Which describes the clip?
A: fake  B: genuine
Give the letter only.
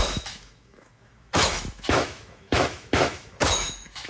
A